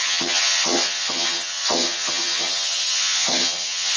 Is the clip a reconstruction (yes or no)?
yes